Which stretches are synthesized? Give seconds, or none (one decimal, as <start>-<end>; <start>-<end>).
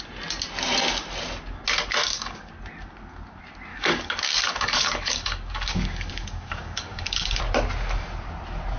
2.0-2.5; 3.7-7.4